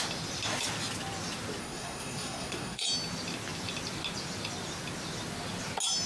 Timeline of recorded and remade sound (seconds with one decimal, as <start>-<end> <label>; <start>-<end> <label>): 0.0-1.6 recorded; 1.6-2.8 remade; 2.8-6.1 recorded